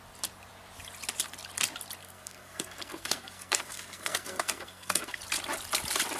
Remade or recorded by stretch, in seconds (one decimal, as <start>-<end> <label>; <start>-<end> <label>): 0.0-2.0 recorded; 2.0-5.2 remade; 5.2-6.2 recorded